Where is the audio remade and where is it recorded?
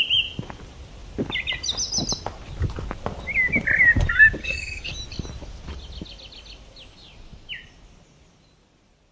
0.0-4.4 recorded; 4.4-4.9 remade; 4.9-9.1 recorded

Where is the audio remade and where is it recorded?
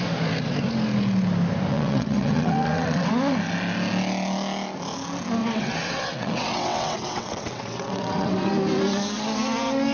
0.0-1.7 recorded; 1.7-3.1 remade; 3.1-5.4 recorded; 5.4-8.5 remade; 8.5-9.9 recorded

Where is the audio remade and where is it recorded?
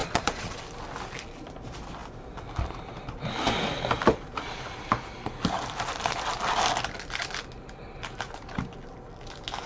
0.0-0.6 remade; 0.6-9.7 recorded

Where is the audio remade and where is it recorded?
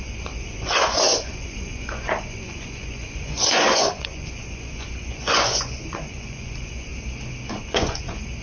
0.0-6.9 remade; 6.9-7.5 recorded; 7.5-8.4 remade